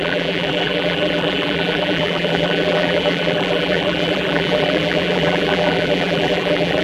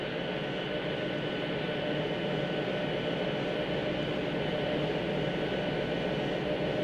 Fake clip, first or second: first